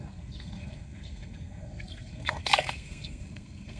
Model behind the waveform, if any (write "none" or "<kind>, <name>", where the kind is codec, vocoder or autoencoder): codec, SNAC